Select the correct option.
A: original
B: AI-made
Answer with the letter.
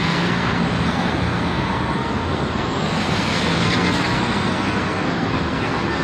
B